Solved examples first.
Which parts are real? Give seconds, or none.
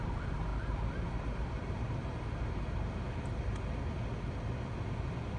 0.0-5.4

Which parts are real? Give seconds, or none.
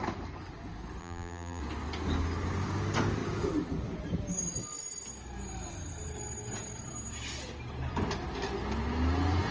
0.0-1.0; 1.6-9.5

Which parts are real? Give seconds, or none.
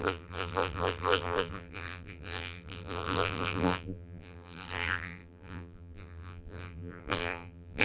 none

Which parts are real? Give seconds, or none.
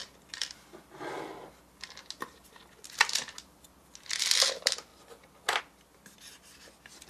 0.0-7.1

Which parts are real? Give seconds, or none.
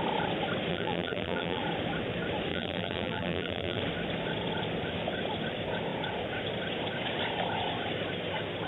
0.0-0.7; 1.6-2.5; 3.8-8.7